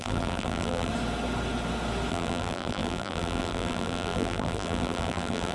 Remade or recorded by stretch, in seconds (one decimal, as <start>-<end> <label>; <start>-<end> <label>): 0.0-0.9 remade; 0.9-2.1 recorded; 2.1-5.5 remade